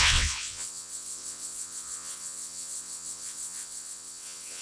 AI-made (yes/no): yes